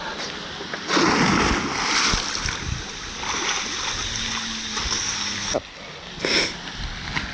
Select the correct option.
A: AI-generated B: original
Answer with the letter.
B